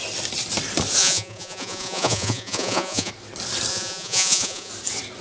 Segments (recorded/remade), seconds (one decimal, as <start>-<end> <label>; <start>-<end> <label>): 0.0-1.0 recorded; 1.0-3.1 remade; 3.1-3.7 recorded; 3.7-4.7 remade; 4.7-5.2 recorded